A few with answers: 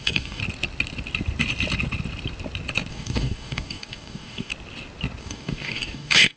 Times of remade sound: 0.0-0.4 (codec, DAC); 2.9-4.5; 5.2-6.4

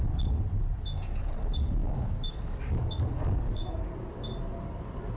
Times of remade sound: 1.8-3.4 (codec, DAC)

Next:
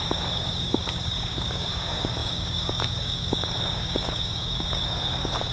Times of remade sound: 0.0-5.5 (codec, DAC)

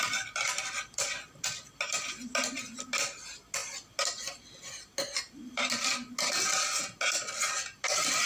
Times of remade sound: none

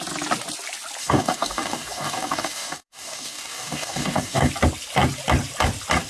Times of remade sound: 1.0-4.5 (codec, DAC)